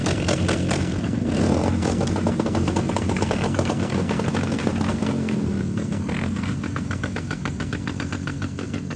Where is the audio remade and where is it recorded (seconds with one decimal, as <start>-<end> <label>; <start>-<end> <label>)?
0.0-9.0 remade